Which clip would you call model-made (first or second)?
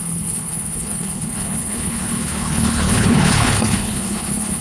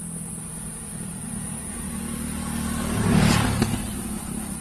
first